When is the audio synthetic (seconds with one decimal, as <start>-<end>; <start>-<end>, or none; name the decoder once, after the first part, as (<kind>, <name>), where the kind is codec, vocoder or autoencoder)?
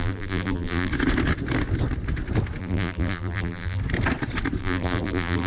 0.0-0.9 (vocoder, BigVGAN v2); 2.6-3.8; 4.6-5.5